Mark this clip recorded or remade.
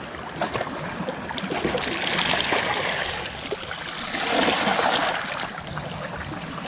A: recorded